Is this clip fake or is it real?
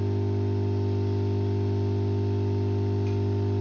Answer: real